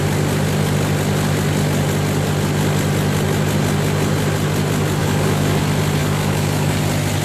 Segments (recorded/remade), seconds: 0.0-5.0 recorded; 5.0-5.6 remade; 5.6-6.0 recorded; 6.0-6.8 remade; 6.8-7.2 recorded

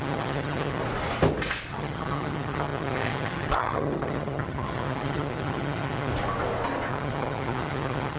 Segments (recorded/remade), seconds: 0.0-0.8 remade; 0.8-1.7 recorded; 1.7-6.1 remade; 6.1-6.9 recorded; 6.9-8.2 remade

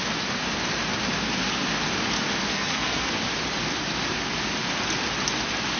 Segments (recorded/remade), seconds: 0.0-2.5 recorded; 2.5-3.1 remade; 3.1-5.8 recorded

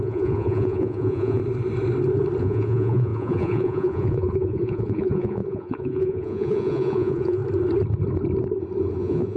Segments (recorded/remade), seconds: 0.0-1.4 remade; 1.4-2.4 recorded; 2.4-7.4 remade; 7.4-9.0 recorded; 9.0-9.4 remade